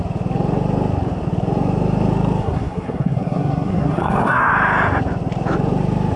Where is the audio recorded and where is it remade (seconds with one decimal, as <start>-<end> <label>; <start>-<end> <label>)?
0.0-2.4 recorded; 2.4-4.5 remade; 4.5-6.2 recorded